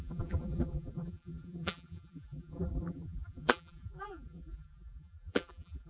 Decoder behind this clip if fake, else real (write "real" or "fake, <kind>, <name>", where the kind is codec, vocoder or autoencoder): fake, vocoder, BigVGAN v2